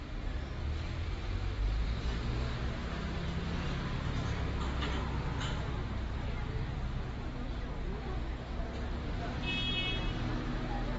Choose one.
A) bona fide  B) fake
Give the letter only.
A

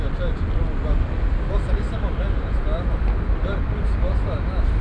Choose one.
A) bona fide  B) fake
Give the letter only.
A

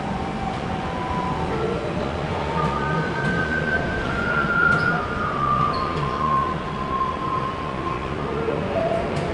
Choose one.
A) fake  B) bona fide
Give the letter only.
A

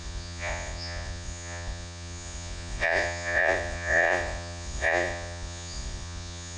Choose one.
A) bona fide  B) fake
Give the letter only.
B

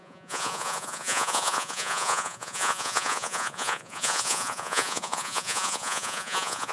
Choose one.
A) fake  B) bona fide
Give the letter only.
A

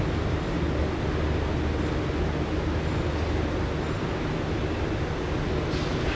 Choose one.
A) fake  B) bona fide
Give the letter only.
B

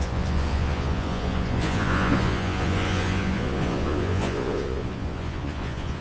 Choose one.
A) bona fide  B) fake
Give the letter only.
B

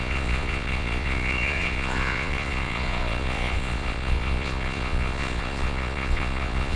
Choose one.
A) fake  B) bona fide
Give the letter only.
A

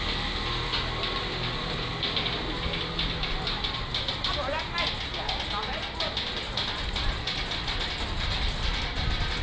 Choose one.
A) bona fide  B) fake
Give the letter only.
A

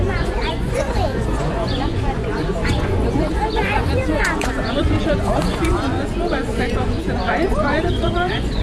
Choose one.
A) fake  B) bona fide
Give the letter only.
A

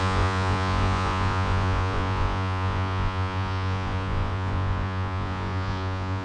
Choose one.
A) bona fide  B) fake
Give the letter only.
B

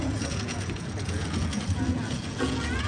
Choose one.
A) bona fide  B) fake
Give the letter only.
B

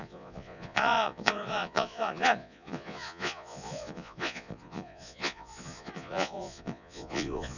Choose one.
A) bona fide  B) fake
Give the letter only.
B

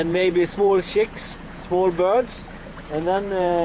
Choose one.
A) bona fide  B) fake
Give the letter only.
B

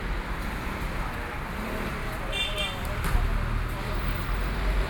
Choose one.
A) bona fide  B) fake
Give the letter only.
A